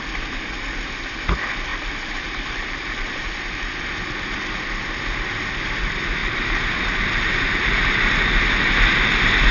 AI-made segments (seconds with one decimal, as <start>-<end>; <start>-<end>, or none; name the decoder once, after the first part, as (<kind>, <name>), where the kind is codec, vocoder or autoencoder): 1.7-3.2 (vocoder, BigVGAN v2); 6.2-9.5